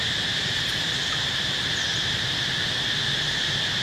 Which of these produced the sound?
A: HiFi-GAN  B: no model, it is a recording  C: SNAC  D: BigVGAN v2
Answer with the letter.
D